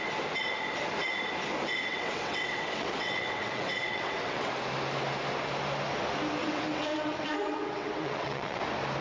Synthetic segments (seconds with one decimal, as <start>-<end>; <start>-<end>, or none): 1.9-4.5; 6.4-8.6